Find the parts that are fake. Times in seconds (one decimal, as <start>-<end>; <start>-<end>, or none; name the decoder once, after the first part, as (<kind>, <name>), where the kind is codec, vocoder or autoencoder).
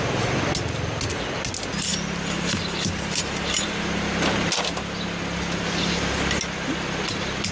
none